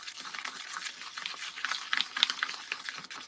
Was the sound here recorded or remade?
recorded